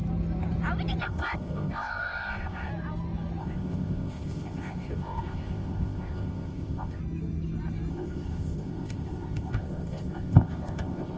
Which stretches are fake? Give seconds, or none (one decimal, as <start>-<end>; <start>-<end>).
1.0-2.7; 3.4-7.0; 7.9-11.2